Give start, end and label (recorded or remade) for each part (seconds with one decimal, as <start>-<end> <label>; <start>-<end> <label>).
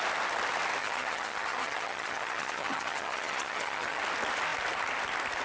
0.0-0.8 recorded; 0.8-4.0 remade; 4.0-5.4 recorded